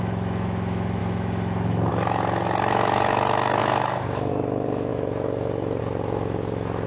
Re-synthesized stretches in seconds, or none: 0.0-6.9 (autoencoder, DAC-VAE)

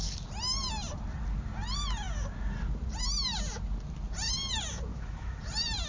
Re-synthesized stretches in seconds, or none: 4.9-5.4 (autoencoder, DAC-VAE)

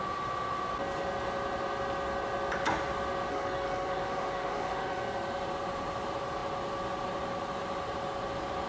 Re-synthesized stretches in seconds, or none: 3.3-5.0 (autoencoder, DAC-VAE)

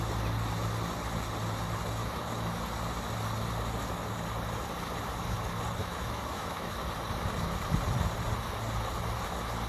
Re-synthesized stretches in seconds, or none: 2.0-2.6 (autoencoder, DAC-VAE); 5.8-6.8

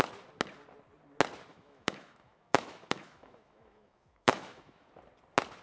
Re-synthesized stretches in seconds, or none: 1.5-4.9 (autoencoder, DAC-VAE)

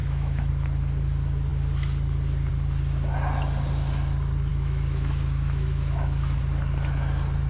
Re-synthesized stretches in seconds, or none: 0.0-0.5 (autoencoder, DAC-VAE); 4.5-6.4